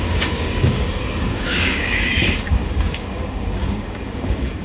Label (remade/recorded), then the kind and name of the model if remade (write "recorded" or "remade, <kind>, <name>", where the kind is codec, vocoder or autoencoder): remade, codec, DAC